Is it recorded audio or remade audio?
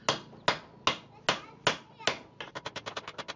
recorded